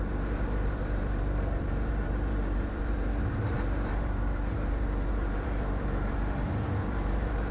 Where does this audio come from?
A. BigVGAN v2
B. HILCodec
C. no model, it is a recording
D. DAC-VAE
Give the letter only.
A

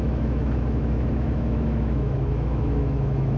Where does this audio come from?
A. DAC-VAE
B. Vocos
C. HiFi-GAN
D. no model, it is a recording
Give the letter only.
A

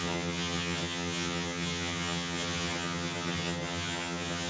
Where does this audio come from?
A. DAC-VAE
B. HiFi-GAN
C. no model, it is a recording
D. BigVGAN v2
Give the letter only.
B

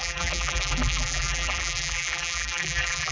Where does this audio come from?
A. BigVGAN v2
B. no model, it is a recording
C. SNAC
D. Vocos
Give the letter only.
A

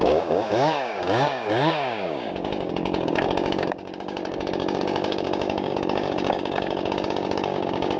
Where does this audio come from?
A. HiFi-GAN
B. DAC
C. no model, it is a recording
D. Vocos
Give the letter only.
B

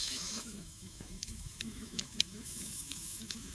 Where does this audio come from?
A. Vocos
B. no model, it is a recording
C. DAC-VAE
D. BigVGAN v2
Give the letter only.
C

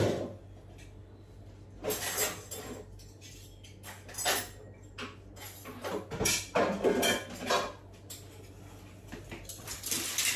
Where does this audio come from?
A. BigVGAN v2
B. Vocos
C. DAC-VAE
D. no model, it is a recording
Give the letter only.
D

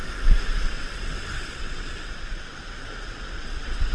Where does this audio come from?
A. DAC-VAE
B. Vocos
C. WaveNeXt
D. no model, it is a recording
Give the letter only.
C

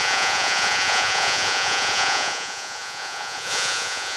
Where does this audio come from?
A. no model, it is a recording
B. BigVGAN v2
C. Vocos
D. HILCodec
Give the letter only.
C